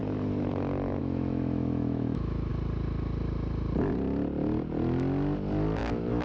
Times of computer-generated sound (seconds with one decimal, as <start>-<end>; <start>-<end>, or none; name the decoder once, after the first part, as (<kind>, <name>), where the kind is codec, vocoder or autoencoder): 1.0-2.5 (autoencoder, DAC-VAE); 5.8-6.2